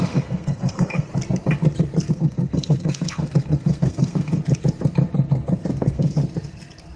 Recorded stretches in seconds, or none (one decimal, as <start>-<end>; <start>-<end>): 1.1-2.1; 4.4-5.8; 6.2-7.0